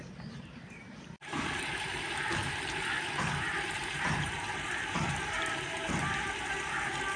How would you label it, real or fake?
fake